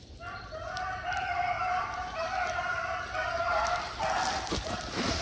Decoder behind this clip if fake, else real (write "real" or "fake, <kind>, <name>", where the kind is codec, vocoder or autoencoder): real